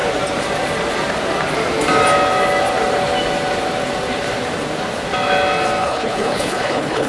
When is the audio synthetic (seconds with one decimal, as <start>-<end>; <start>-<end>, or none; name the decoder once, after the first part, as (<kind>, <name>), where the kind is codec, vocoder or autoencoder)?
5.8-7.1 (codec, HILCodec)